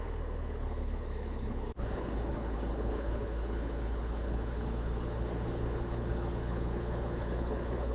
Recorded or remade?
remade